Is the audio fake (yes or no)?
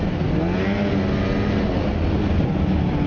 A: no